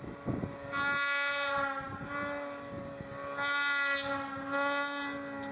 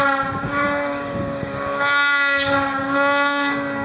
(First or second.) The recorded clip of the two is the first